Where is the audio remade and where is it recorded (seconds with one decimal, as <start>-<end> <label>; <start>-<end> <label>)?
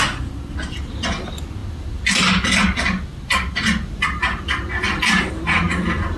0.0-6.2 recorded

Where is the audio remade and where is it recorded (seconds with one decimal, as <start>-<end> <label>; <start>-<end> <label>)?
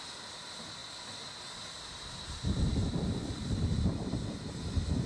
0.0-5.1 recorded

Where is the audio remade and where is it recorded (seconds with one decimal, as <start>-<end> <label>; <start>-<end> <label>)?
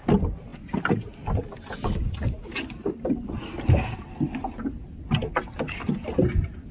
0.0-6.7 recorded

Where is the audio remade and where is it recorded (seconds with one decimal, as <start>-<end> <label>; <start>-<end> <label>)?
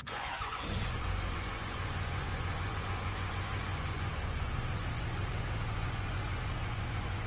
0.0-7.3 remade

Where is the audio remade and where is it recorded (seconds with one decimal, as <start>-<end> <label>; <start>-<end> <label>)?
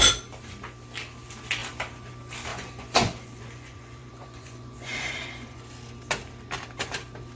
0.0-2.5 recorded; 2.5-5.6 remade; 5.6-7.4 recorded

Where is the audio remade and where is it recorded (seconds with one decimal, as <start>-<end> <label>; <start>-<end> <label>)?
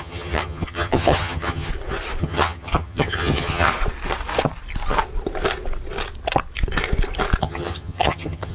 0.0-1.7 remade; 1.7-2.2 recorded; 2.2-3.7 remade; 3.7-7.4 recorded; 7.4-8.5 remade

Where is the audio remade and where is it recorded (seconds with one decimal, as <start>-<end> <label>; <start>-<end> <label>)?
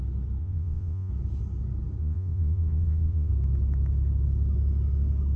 0.0-0.4 recorded; 0.4-1.1 remade; 1.1-2.0 recorded; 2.0-3.3 remade; 3.3-5.4 recorded